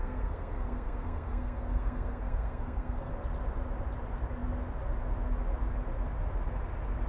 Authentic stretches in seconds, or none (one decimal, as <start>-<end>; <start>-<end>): 3.1-7.1